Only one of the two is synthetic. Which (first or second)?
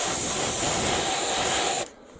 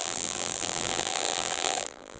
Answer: second